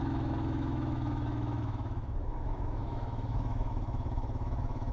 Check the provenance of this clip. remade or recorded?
remade